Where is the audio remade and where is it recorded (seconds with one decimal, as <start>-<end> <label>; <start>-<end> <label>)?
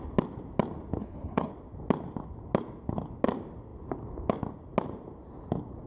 0.0-1.0 recorded; 1.0-1.5 remade; 1.5-5.9 recorded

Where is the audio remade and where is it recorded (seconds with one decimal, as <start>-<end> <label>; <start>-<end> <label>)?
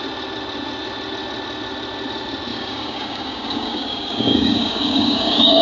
0.0-2.5 recorded; 2.5-5.6 remade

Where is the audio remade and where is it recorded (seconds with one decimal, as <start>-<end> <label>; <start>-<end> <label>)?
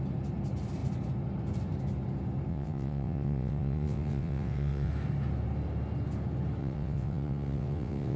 0.0-2.5 recorded; 2.5-4.9 remade; 4.9-6.6 recorded; 6.6-8.2 remade